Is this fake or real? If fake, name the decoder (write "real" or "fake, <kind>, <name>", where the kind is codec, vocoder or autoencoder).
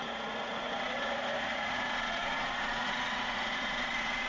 fake, vocoder, Vocos